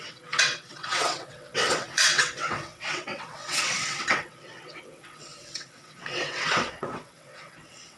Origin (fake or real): fake